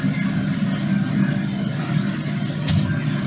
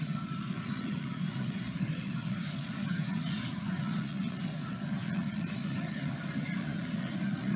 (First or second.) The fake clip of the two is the second